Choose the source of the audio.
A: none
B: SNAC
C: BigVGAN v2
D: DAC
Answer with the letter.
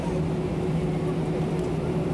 A